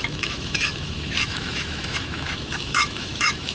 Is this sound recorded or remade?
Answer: remade